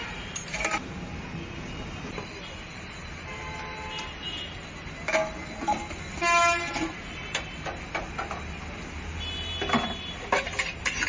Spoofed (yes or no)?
no